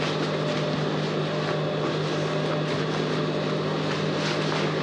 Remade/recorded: recorded